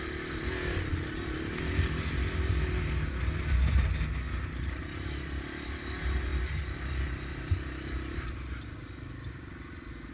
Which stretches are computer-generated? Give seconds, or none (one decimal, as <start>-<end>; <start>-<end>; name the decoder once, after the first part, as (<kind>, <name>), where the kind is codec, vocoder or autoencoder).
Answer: none